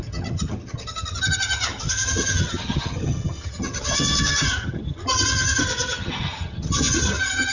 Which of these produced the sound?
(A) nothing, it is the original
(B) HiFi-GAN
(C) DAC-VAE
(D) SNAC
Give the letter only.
B